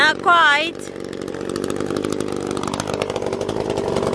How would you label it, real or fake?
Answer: real